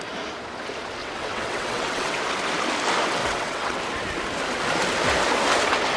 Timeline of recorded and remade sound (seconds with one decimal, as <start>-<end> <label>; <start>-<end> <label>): 0.0-1.0 recorded; 1.0-2.2 remade; 2.2-3.2 recorded; 3.2-3.8 remade; 3.8-6.0 recorded